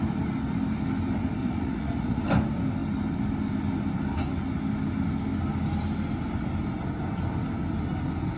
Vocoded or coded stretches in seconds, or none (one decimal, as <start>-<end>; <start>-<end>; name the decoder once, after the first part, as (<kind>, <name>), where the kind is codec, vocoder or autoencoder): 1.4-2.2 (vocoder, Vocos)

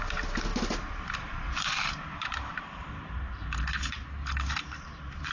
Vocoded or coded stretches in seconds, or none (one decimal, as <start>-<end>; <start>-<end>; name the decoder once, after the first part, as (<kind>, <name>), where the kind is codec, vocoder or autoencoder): 0.0-5.3 (vocoder, BigVGAN v2)

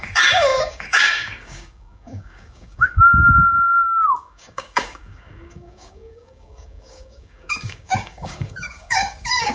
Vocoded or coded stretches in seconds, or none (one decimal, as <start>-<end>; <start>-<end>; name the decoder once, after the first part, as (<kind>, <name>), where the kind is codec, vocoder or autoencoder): 0.0-9.5 (codec, DAC)

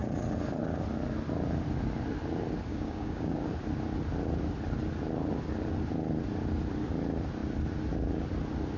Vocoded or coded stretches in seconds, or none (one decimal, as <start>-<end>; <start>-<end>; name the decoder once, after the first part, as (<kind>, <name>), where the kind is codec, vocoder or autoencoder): 2.7-3.5 (codec, DAC)

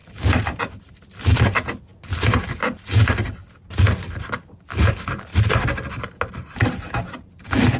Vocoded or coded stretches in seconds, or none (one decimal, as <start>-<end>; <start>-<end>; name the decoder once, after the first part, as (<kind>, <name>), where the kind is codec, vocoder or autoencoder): none

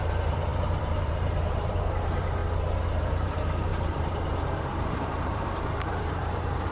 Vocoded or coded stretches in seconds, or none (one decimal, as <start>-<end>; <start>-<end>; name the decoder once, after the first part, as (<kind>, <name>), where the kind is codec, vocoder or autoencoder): 0.0-2.4 (vocoder, BigVGAN v2); 3.0-6.7